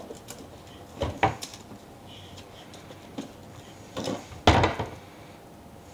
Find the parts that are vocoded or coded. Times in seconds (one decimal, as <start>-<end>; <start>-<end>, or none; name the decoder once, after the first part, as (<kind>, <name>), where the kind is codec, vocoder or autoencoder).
1.5-2.8 (vocoder, BigVGAN v2); 3.4-4.3